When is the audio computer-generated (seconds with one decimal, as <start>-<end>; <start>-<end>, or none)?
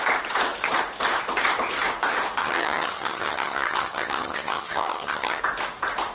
2.4-5.4